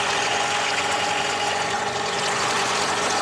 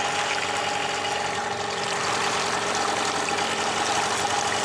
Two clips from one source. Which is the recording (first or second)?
second